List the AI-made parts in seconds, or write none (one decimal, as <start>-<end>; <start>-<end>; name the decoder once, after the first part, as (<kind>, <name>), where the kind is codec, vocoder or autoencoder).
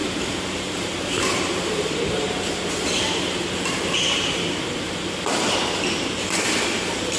0.0-4.2 (vocoder, BigVGAN v2)